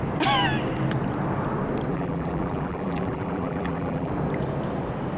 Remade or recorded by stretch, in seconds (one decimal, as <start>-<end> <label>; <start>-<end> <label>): 0.0-1.9 recorded; 1.9-4.1 remade; 4.1-5.2 recorded